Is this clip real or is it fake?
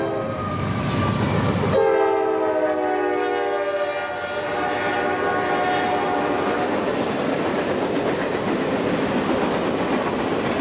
real